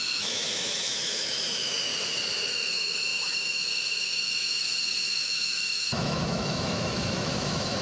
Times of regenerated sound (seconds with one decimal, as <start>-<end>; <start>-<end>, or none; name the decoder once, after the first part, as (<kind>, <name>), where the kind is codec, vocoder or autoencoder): 0.0-1.9 (autoencoder, DAC-VAE); 2.5-7.8